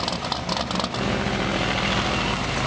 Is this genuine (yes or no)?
yes